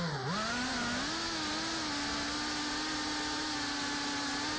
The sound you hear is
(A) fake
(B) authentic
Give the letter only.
B